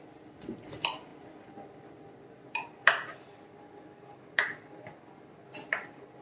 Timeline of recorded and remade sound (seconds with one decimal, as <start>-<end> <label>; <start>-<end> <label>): 0.0-6.2 recorded